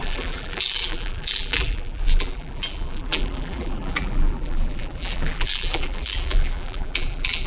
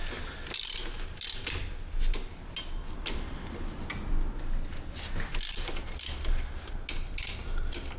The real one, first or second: second